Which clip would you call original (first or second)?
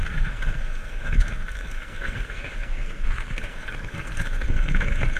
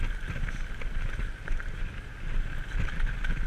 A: second